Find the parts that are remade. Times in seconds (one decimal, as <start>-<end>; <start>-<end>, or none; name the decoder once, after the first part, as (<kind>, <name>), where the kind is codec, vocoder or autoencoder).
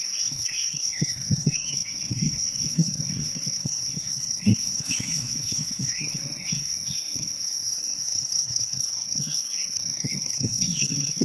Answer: 0.0-11.2 (codec, SNAC)